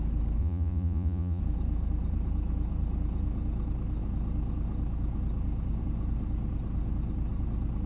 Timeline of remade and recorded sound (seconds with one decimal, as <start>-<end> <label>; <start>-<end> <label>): 0.0-0.4 recorded; 0.4-1.4 remade; 1.4-7.9 recorded